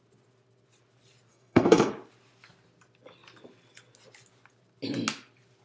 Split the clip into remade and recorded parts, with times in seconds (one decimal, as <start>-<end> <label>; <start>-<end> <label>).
0.0-1.3 recorded; 1.3-1.9 remade; 1.9-5.6 recorded